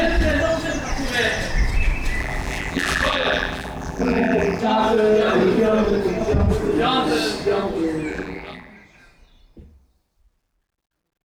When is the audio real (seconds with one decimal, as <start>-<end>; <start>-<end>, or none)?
0.0-2.2; 4.6-8.1; 8.7-11.2